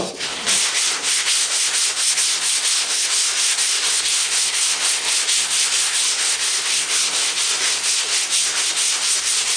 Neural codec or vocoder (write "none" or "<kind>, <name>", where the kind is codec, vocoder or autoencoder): codec, SNAC